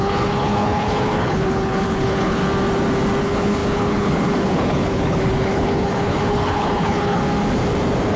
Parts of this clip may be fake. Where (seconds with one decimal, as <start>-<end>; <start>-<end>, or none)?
0.0-2.4; 3.2-7.2